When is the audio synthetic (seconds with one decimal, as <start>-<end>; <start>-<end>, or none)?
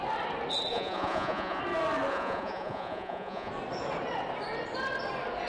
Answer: 0.7-1.6; 2.1-3.5